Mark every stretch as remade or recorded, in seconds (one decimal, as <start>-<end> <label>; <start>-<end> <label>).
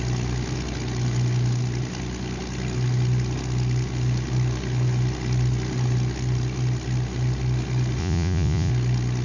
0.0-8.0 recorded; 8.0-8.7 remade; 8.7-9.2 recorded